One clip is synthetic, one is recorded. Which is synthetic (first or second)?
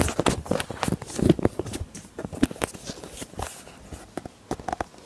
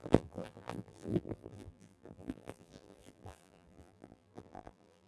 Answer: second